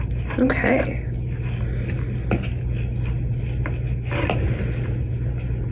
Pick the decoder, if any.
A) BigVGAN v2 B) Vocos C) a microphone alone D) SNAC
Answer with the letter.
C